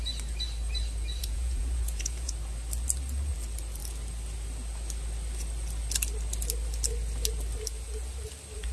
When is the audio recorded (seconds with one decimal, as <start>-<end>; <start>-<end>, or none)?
0.0-1.2; 2.3-8.7